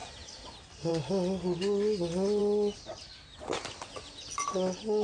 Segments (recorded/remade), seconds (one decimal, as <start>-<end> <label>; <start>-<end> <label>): 0.0-5.0 recorded